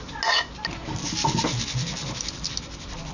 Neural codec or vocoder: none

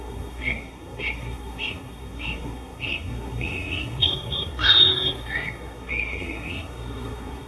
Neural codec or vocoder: codec, SNAC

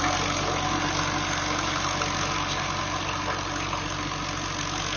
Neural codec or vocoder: none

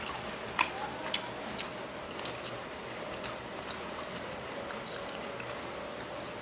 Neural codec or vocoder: none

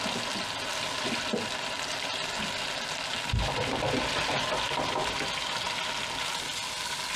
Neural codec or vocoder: none